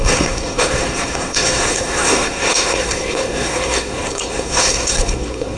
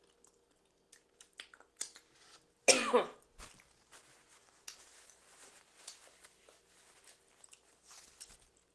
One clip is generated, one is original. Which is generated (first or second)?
first